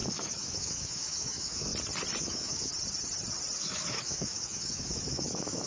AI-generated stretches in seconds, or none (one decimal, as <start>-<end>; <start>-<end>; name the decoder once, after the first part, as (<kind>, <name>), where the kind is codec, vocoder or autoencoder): 0.0-1.7 (autoencoder, DAC-VAE); 2.2-2.7; 3.6-5.7